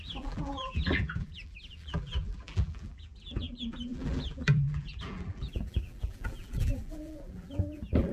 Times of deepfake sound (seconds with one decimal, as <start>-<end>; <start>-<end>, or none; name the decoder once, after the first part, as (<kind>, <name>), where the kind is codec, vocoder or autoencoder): 0.0-8.1 (vocoder, BigVGAN v2)